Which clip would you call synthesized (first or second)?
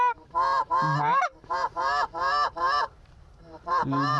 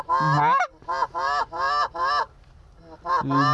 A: first